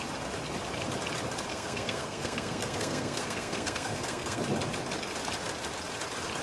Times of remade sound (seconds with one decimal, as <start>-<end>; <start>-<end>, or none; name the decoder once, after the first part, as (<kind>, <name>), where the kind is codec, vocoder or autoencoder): 1.5-4.4 (codec, SNAC)